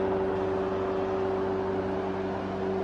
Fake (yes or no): no